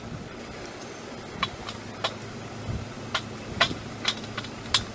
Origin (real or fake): real